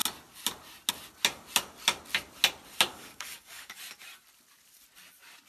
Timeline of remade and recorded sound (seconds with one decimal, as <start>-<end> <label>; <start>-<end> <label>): 0.0-2.9 recorded; 2.9-3.8 remade; 3.8-5.5 recorded